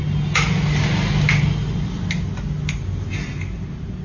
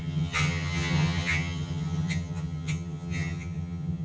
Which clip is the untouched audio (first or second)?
first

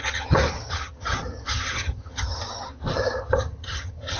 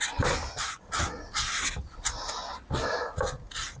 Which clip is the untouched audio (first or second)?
second